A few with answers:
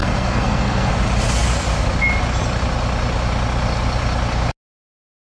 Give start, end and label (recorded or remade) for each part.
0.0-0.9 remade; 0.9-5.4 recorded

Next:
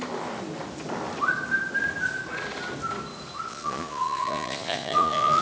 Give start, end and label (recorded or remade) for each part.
0.0-3.5 recorded; 3.5-5.4 remade

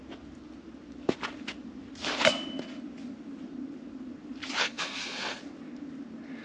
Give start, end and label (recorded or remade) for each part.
0.0-4.6 recorded; 4.6-5.4 remade; 5.4-6.4 recorded

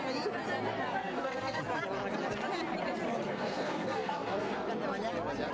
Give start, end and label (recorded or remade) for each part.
0.0-1.0 recorded; 1.0-1.6 remade; 1.6-3.3 recorded; 3.3-4.7 remade; 4.7-5.5 recorded

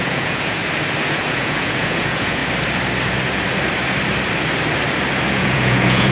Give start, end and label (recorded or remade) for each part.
0.0-0.6 remade; 0.6-1.3 recorded; 1.3-2.4 remade; 2.4-5.3 recorded; 5.3-6.1 remade

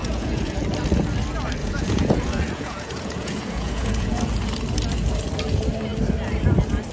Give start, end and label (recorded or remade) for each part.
0.0-0.6 remade; 0.6-1.6 recorded; 1.6-4.2 remade; 4.2-6.9 recorded

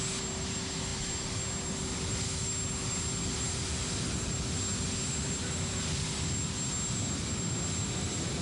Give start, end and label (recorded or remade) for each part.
0.0-8.4 recorded

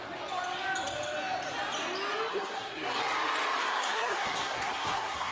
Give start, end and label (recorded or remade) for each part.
0.0-2.3 recorded; 2.3-3.0 remade; 3.0-3.6 recorded; 3.6-5.3 remade